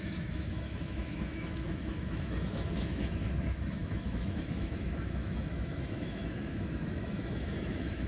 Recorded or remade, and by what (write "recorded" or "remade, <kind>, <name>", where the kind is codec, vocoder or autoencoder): remade, autoencoder, DAC-VAE